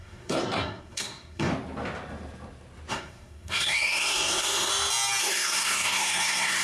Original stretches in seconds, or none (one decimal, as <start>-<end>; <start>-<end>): 1.5-2.9; 4.7-5.2